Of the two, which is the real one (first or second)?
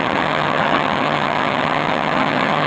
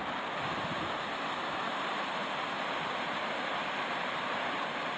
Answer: second